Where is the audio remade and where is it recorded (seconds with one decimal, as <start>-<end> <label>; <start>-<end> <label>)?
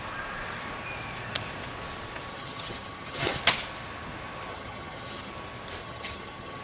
0.0-2.3 recorded; 2.3-3.4 remade; 3.4-4.5 recorded; 4.5-5.3 remade; 5.3-5.8 recorded; 5.8-6.6 remade